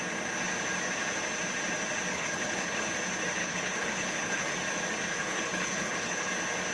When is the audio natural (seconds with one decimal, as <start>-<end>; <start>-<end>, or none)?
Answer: 0.0-2.1; 2.9-3.4; 4.5-5.1; 6.3-6.7